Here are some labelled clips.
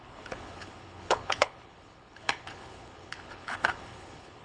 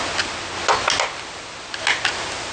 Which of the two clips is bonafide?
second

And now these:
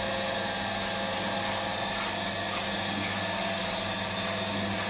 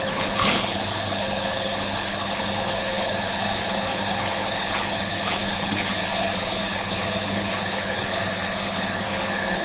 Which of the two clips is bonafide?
first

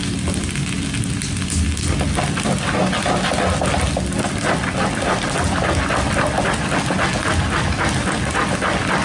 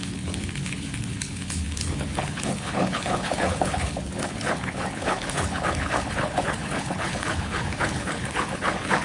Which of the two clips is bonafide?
first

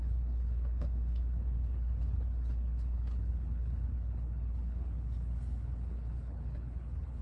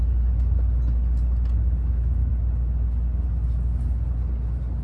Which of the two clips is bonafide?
second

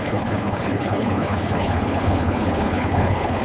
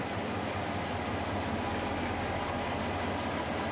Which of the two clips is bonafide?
second